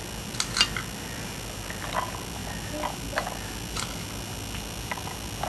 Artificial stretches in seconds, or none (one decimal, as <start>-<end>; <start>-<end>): none